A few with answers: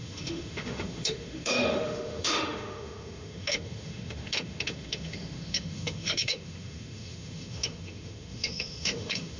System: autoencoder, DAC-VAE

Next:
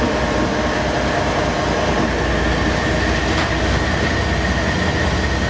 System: none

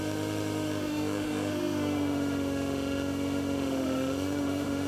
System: autoencoder, DAC-VAE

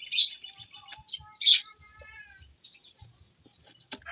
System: none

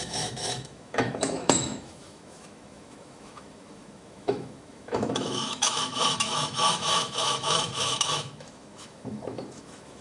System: autoencoder, DAC-VAE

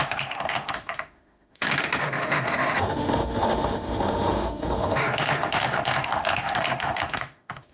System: autoencoder, DAC-VAE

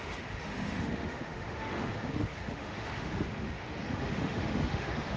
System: autoencoder, DAC-VAE